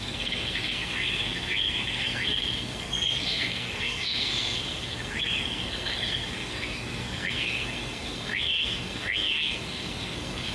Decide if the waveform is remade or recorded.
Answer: remade